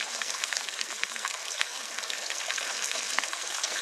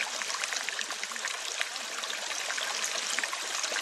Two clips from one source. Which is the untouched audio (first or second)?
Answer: second